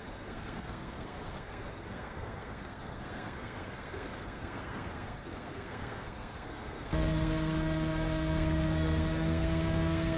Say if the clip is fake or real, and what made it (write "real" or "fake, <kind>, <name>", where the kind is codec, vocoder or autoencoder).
fake, codec, SNAC